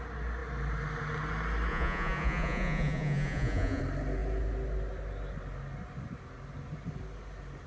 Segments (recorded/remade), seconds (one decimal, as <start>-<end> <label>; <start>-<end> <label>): 0.0-1.7 recorded; 1.7-3.8 remade; 3.8-7.7 recorded